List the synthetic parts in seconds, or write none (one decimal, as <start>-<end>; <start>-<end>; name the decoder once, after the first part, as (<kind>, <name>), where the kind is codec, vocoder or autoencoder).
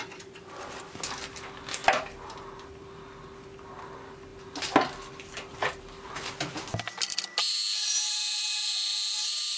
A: none